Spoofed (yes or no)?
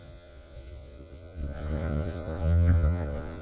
yes